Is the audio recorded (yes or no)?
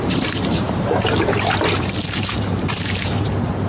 no